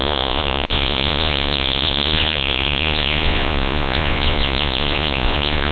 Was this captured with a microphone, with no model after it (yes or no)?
no